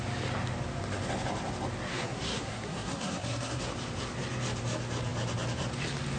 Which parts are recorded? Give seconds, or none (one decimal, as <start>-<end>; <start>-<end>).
0.0-1.9; 3.7-6.2